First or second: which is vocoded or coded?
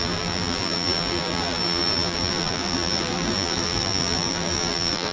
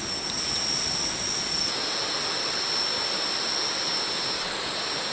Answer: first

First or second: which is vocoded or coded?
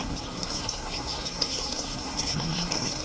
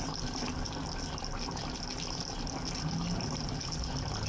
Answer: first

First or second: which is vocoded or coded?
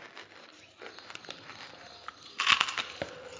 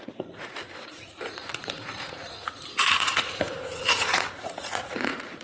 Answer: second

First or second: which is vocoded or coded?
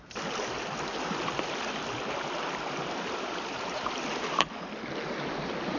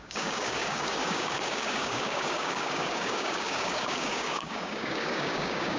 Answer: second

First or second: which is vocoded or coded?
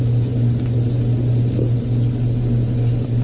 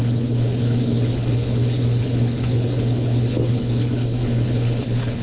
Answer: second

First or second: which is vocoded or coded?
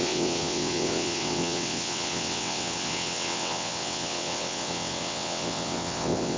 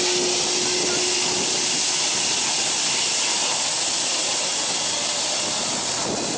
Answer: first